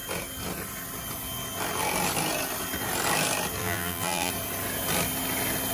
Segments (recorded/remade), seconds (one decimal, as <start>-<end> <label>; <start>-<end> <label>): 0.0-3.6 recorded; 3.6-4.3 remade; 4.3-5.7 recorded